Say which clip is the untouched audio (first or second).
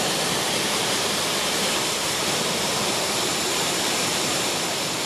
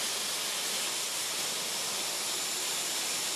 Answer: second